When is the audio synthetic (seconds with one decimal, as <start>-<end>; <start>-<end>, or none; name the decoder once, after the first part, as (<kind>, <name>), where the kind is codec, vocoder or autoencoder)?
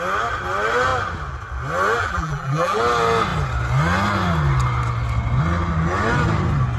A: 2.0-2.8 (vocoder, BigVGAN v2)